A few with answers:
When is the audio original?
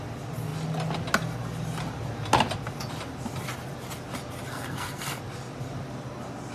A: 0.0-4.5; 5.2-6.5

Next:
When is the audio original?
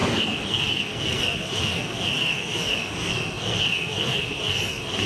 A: none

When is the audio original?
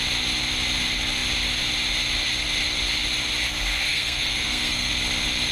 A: 0.0-3.9; 4.9-5.5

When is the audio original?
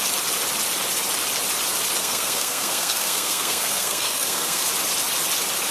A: 0.0-2.0; 4.7-5.7